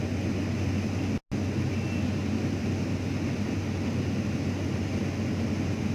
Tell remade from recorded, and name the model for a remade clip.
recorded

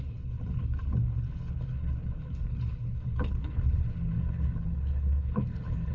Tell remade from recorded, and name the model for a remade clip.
remade, codec, HILCodec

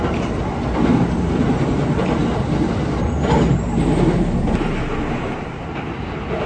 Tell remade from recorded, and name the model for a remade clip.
recorded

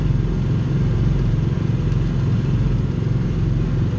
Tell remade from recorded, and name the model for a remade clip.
recorded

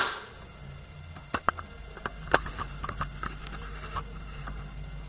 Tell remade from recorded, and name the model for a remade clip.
recorded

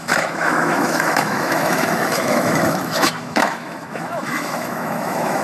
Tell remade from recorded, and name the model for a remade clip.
remade, autoencoder, DAC-VAE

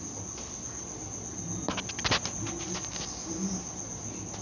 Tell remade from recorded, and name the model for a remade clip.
recorded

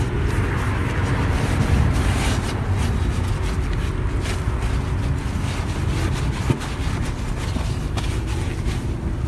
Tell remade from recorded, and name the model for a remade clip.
recorded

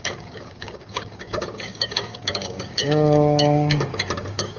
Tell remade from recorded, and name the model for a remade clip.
remade, codec, DAC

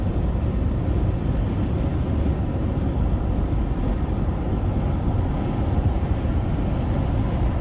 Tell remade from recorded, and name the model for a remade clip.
recorded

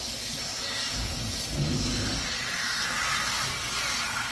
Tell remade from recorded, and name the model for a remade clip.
recorded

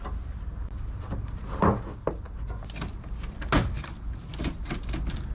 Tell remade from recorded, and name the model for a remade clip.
recorded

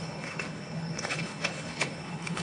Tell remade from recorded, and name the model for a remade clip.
remade, codec, HILCodec